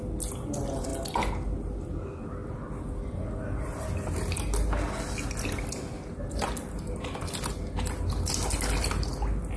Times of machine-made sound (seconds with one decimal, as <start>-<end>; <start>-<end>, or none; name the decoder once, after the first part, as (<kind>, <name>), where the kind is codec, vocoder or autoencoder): none